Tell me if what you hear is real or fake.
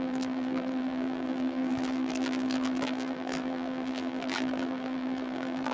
fake